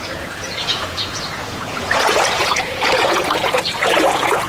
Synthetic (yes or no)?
yes